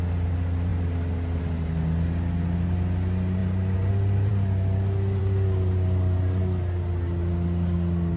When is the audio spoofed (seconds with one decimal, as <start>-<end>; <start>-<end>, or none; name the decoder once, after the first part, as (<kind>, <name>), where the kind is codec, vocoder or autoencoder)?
none